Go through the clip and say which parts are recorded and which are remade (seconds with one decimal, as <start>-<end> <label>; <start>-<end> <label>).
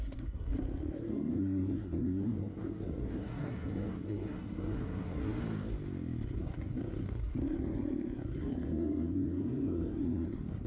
0.0-5.4 remade; 5.4-6.4 recorded; 6.4-10.7 remade